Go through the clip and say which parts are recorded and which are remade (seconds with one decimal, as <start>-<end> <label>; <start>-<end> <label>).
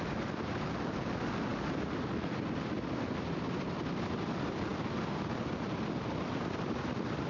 0.0-7.3 recorded